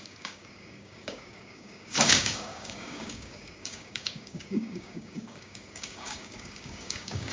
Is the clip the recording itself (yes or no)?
no